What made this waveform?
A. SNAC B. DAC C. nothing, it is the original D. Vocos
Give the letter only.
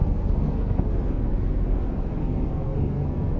A